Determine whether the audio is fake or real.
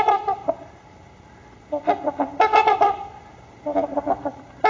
fake